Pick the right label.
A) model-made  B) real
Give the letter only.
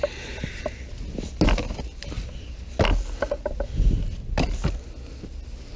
B